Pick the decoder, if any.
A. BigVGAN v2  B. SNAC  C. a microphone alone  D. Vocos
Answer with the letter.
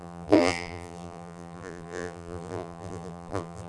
A